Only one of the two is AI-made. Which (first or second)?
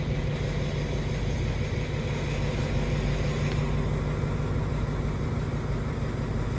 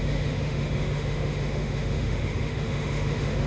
second